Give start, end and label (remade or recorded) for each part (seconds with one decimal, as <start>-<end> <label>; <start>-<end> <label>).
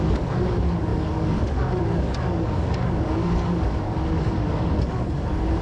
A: 0.0-5.6 remade